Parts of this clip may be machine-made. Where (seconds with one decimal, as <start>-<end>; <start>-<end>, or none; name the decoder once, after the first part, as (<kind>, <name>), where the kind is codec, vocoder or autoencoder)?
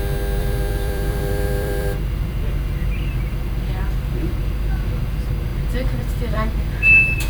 0.4-4.4 (vocoder, BigVGAN v2); 5.5-6.6